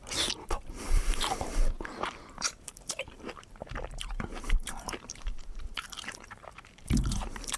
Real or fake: fake